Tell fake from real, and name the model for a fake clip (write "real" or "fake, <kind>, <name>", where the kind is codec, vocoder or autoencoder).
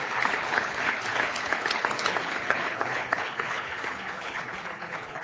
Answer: fake, codec, HILCodec